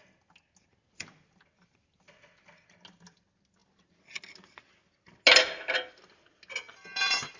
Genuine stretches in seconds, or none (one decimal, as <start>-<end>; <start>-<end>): 0.0-7.4